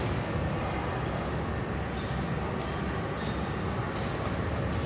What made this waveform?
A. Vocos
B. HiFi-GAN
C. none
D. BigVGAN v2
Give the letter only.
C